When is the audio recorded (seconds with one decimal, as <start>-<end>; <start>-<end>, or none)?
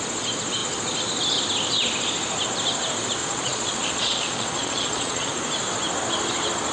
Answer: 0.0-3.2; 5.3-6.7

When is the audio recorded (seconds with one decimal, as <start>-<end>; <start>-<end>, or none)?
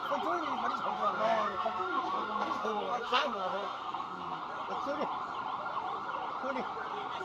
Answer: 0.0-0.9; 4.4-7.2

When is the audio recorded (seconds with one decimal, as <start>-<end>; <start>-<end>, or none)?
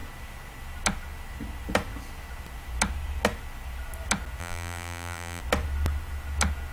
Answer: 0.0-4.4; 5.4-6.7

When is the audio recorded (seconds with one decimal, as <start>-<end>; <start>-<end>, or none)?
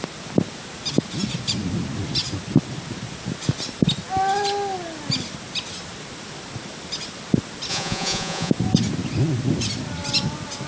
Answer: 0.0-7.7; 8.5-10.7